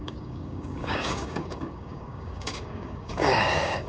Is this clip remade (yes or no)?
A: yes